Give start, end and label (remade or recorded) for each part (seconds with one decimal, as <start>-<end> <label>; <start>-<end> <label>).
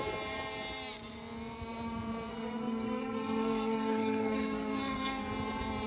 0.0-2.3 recorded; 2.3-5.2 remade; 5.2-5.9 recorded